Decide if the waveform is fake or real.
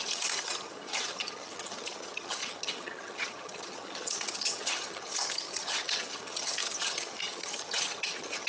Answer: fake